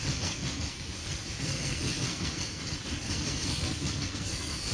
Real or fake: fake